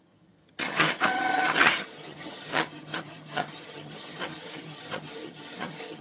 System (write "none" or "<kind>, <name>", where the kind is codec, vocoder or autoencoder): vocoder, HiFi-GAN